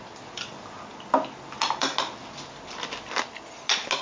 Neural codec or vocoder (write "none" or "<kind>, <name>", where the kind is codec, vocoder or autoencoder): none